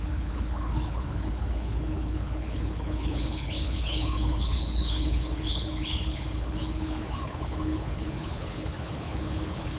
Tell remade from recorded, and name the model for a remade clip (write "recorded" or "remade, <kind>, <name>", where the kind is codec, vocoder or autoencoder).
remade, codec, HILCodec